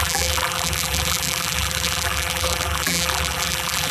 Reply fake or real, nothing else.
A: fake